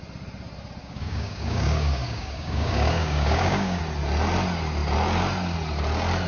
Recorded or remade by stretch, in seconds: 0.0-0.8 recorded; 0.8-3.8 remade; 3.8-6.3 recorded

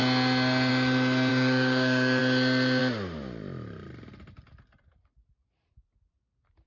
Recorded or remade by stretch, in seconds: 0.0-1.3 recorded; 1.3-2.2 remade; 2.2-6.7 recorded

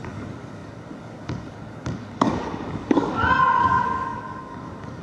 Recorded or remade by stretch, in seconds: 0.0-5.0 remade

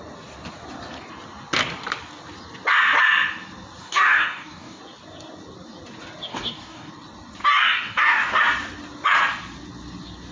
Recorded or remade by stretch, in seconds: 0.0-3.8 recorded; 3.8-4.8 remade; 4.8-6.3 recorded; 6.3-6.9 remade; 6.9-7.4 recorded; 7.4-8.4 remade; 8.4-10.3 recorded

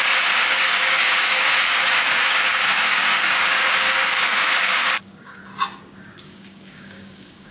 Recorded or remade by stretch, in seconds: 0.0-5.4 remade; 5.4-5.9 recorded; 5.9-7.5 remade

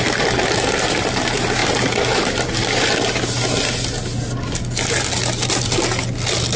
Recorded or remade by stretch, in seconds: 0.0-6.6 recorded

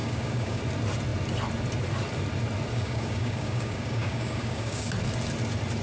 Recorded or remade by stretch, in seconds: 0.0-0.6 remade; 0.6-2.7 recorded; 2.7-4.9 remade; 4.9-5.8 recorded

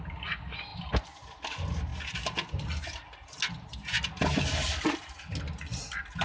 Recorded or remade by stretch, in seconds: 0.0-6.2 recorded